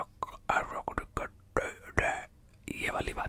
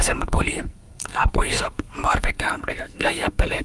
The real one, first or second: first